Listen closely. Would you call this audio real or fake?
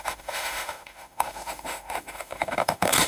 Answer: fake